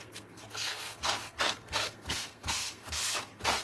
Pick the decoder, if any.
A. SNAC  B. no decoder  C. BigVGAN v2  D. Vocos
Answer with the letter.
A